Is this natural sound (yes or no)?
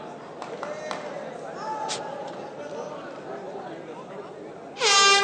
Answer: yes